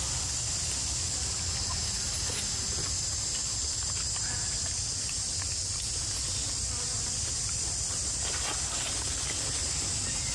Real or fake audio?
real